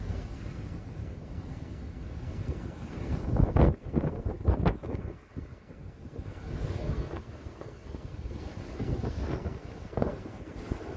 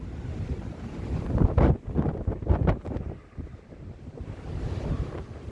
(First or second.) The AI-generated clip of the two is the first